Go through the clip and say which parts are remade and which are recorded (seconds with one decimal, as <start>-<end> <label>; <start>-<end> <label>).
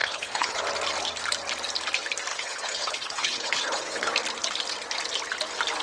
0.0-0.6 remade; 0.6-2.3 recorded; 2.3-4.1 remade; 4.1-5.8 recorded